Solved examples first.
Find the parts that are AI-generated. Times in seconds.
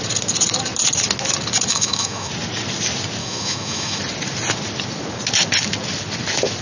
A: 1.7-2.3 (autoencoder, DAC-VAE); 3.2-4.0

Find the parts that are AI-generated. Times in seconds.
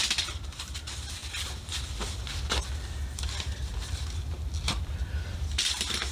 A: 0.0-1.2 (vocoder, BigVGAN v2); 3.2-3.7; 4.8-6.1